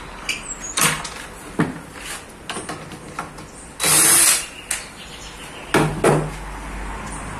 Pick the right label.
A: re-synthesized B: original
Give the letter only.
B